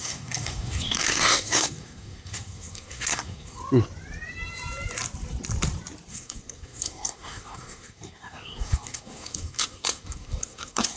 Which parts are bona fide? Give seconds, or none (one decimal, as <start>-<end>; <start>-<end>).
3.6-6.1